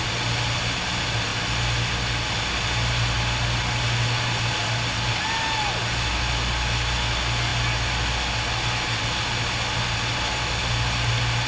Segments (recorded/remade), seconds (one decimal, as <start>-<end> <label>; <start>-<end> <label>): 0.0-11.5 recorded